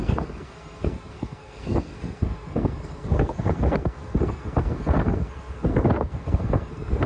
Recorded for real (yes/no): no